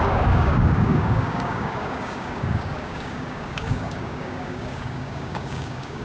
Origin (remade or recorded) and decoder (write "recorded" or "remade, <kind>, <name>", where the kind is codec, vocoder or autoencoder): remade, codec, DAC